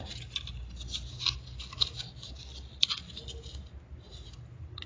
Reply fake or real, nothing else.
real